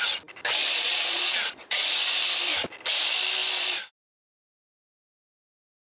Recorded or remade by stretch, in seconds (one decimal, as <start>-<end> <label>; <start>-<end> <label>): 0.0-0.6 recorded; 0.6-2.0 remade; 2.0-5.8 recorded